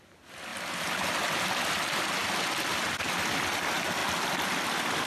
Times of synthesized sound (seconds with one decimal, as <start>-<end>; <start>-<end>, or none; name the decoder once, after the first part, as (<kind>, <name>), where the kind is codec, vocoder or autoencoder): 4.0-5.1 (vocoder, BigVGAN v2)